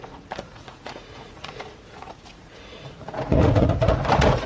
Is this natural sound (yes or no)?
no